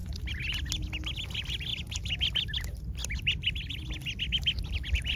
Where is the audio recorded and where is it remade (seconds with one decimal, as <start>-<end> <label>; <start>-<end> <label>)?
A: 0.0-5.2 recorded